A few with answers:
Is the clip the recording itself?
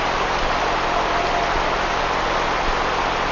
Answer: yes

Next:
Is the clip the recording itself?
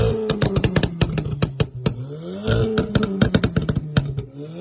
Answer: yes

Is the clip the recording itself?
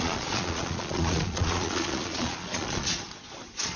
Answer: no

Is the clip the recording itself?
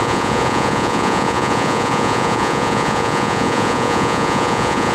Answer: no